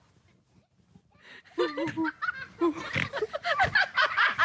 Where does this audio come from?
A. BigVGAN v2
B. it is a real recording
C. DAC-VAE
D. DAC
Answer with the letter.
B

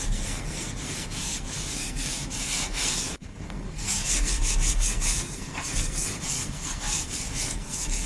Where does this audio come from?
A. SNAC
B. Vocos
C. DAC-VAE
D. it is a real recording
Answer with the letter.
A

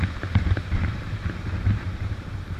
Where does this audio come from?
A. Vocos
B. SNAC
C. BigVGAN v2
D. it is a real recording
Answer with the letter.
C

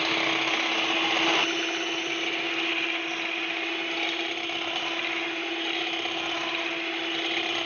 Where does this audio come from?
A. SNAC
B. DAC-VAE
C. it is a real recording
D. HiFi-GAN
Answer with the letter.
C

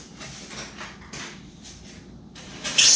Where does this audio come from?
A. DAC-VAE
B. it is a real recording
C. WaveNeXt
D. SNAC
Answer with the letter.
B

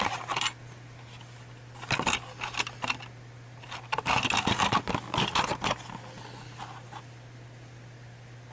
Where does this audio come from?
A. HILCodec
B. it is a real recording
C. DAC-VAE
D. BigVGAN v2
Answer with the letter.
B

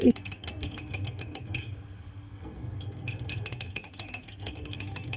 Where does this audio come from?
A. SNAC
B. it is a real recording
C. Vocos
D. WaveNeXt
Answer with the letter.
A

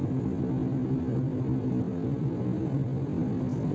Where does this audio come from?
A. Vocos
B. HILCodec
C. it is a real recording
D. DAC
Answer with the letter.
C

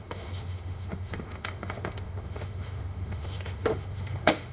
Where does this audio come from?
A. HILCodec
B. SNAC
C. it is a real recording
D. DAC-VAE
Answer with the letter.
D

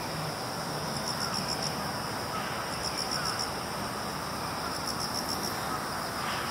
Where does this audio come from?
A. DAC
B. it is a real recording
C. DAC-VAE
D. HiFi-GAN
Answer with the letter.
B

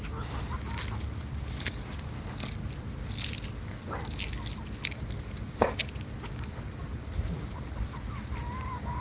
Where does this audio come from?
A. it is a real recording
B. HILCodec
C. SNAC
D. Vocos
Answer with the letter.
A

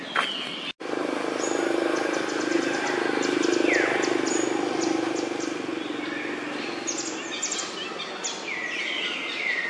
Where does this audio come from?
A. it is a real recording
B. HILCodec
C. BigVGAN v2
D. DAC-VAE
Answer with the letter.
A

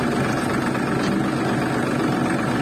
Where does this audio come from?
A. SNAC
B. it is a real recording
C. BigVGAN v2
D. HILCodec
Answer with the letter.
B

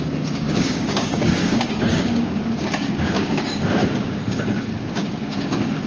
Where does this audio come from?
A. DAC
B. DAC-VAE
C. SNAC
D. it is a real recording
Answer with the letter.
A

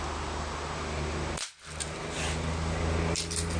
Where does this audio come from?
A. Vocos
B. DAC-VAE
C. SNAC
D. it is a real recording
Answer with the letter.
D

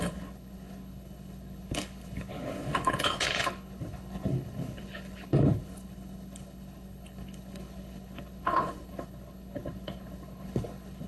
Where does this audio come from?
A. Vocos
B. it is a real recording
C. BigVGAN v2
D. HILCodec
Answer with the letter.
D